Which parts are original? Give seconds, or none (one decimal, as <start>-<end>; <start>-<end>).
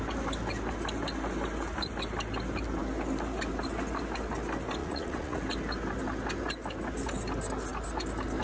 0.0-4.8; 5.4-8.4